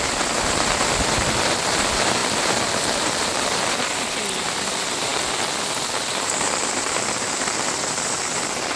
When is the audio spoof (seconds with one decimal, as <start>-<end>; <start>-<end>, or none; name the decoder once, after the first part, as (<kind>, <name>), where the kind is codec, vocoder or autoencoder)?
0.0-2.2 (vocoder, BigVGAN v2); 2.8-5.1; 6.1-8.8